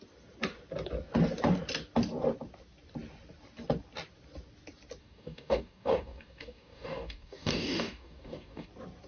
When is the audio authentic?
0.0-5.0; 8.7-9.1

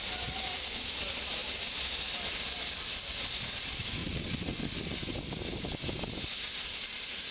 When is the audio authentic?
0.0-4.0; 4.6-7.3

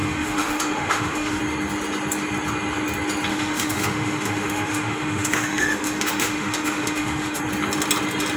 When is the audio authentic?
1.4-3.3; 7.4-8.4

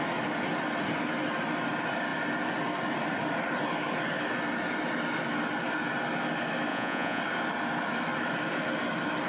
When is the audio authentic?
0.0-6.7; 7.2-9.3

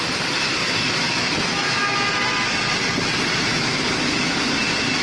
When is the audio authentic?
0.0-0.6; 2.0-3.5; 4.4-5.0

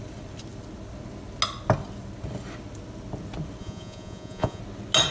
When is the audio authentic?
0.0-3.6; 4.6-5.1